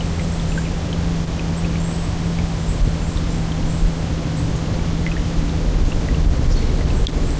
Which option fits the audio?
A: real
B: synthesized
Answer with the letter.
A